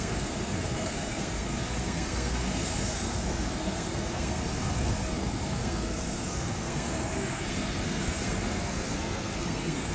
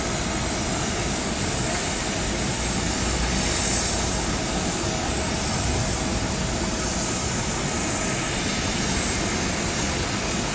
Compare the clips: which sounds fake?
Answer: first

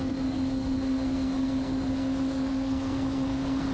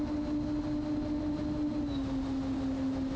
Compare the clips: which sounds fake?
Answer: first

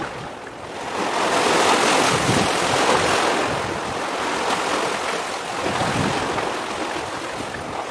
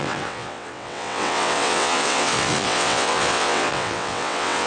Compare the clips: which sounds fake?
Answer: second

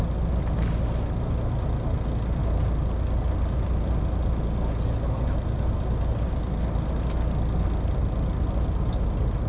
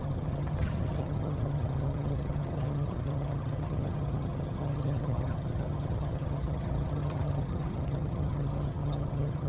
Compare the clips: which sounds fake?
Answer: second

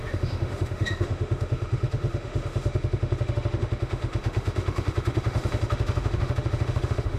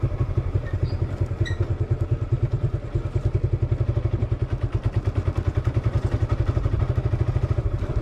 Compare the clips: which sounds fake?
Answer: first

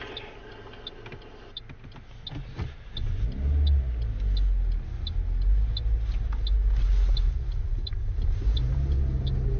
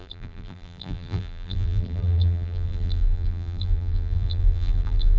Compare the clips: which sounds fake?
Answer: second